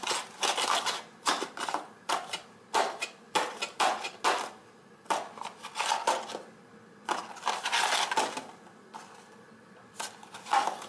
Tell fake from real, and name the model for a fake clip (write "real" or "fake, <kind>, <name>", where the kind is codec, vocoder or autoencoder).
real